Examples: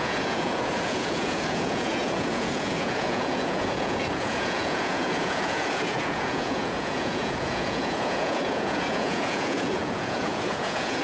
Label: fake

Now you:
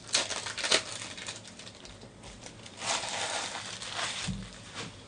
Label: real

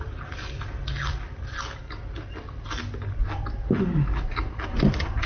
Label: real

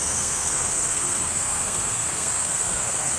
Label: fake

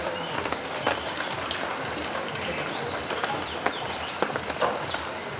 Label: fake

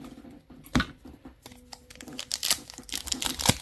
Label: real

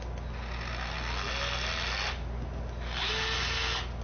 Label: real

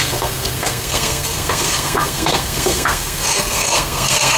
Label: fake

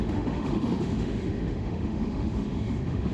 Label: fake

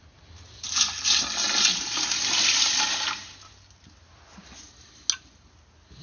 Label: real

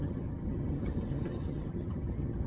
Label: fake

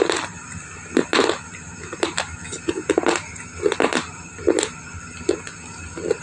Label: real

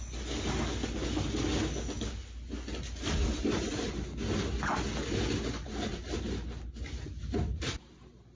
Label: real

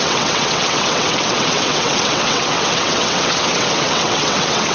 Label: fake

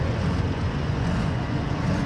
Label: fake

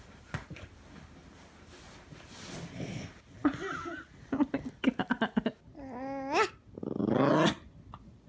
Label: real